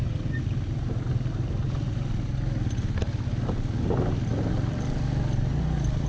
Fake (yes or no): no